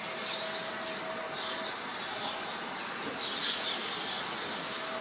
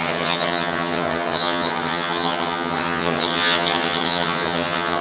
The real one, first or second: first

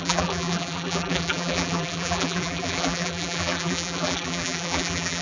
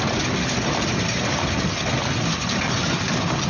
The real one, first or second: second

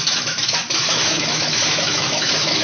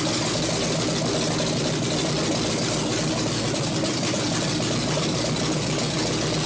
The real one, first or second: second